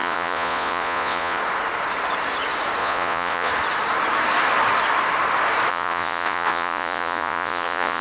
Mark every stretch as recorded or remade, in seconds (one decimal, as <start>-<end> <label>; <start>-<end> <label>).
0.0-1.4 remade; 1.4-2.8 recorded; 2.8-3.5 remade; 3.5-5.7 recorded; 5.7-8.0 remade